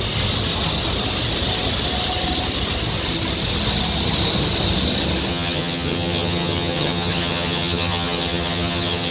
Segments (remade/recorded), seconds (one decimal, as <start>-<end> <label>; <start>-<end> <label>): 0.0-5.3 recorded; 5.3-9.1 remade

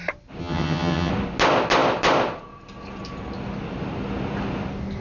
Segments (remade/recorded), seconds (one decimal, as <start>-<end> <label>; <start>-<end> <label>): 0.0-0.4 recorded; 0.4-1.1 remade; 1.1-5.0 recorded

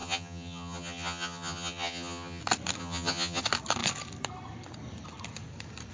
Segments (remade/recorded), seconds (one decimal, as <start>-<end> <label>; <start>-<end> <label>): 0.0-2.4 remade; 2.4-2.8 recorded; 2.8-3.4 remade; 3.4-5.9 recorded

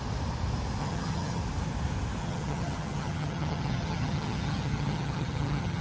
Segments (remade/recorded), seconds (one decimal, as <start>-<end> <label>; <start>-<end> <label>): 0.0-0.8 recorded; 0.8-1.4 remade; 1.4-2.2 recorded; 2.2-5.8 remade

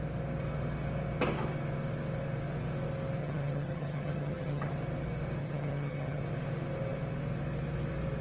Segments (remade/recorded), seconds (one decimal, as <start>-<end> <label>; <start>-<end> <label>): 0.0-3.2 recorded; 3.2-4.7 remade; 4.7-5.4 recorded; 5.4-6.2 remade; 6.2-8.2 recorded

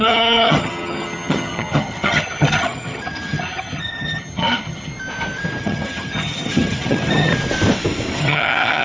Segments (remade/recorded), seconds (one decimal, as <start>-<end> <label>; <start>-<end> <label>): 0.0-4.9 remade; 4.9-5.6 recorded; 5.6-7.3 remade; 7.3-8.2 recorded; 8.2-8.8 remade

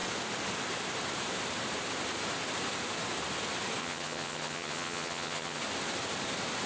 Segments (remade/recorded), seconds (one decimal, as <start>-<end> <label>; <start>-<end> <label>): 0.0-3.8 recorded; 3.8-5.6 remade; 5.6-6.7 recorded

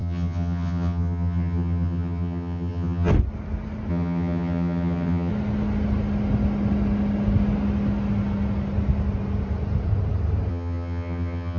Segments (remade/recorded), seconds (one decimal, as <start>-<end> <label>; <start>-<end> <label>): 0.0-3.1 remade; 3.1-3.9 recorded; 3.9-5.3 remade; 5.3-10.5 recorded; 10.5-11.6 remade